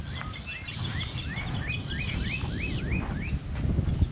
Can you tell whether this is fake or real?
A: real